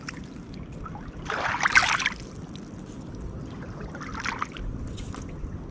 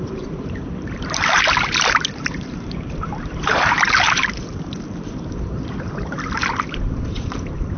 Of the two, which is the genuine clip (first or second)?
first